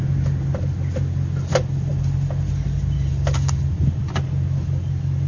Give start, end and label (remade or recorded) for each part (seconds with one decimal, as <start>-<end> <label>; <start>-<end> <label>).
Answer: 0.0-5.3 recorded